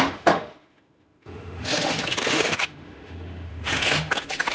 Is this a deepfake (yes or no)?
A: yes